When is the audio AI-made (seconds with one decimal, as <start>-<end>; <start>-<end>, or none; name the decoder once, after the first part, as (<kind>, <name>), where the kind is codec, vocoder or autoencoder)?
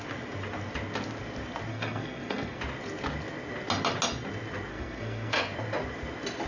1.7-2.6 (codec, SNAC); 4.7-5.4